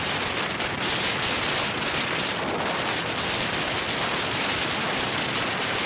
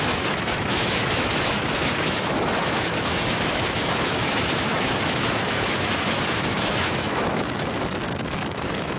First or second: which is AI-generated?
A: second